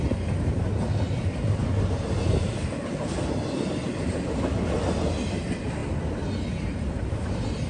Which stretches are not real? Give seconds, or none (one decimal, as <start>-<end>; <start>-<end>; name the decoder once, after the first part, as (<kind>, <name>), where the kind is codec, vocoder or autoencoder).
none